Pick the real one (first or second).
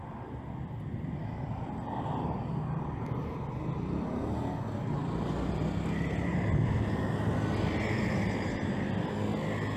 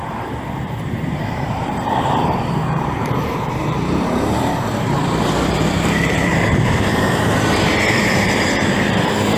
first